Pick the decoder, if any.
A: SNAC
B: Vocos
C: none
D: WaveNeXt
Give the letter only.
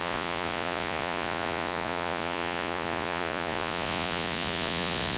B